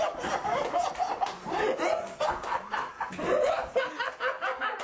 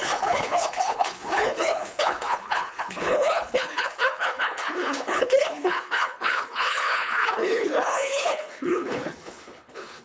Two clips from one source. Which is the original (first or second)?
first